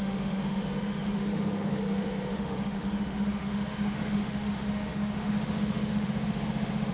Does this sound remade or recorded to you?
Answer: remade